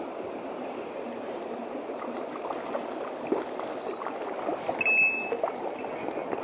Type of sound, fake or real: real